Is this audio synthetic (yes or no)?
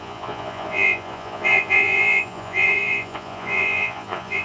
yes